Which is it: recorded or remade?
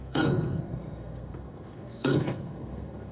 remade